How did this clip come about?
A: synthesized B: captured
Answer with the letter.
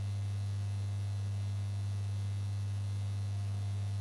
B